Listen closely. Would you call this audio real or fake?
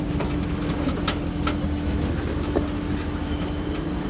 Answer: real